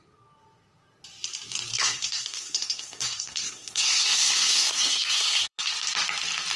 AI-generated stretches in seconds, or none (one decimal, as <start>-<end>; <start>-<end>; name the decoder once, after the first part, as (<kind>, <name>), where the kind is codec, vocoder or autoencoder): 1.7-5.7 (codec, SNAC)